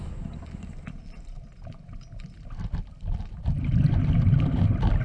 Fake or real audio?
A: real